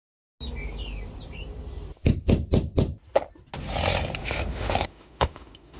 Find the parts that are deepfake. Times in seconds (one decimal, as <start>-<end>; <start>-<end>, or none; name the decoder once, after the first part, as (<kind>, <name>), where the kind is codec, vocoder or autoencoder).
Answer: 4.2-5.8 (autoencoder, DAC-VAE)